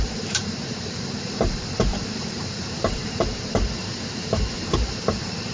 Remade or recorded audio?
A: remade